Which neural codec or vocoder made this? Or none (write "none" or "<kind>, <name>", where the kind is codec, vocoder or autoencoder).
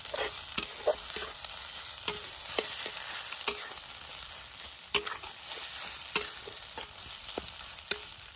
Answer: none